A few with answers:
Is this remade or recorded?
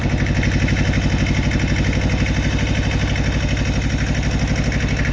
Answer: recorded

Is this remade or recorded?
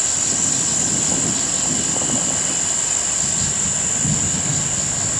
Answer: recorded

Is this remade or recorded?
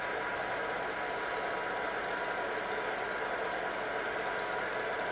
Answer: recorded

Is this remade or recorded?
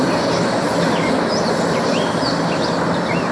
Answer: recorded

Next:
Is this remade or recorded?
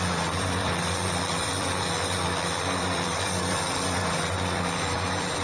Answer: remade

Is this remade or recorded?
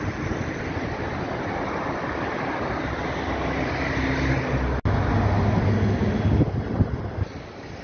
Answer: recorded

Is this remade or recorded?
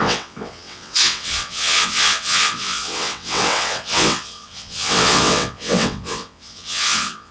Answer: remade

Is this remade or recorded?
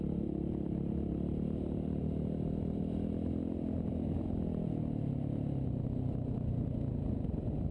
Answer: recorded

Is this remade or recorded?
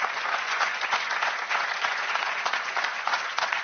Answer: remade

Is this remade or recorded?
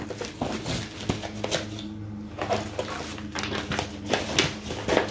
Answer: recorded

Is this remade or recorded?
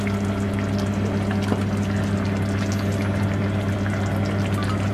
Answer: recorded